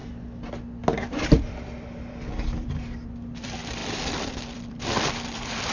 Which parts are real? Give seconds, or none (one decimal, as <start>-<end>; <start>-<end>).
0.0-2.0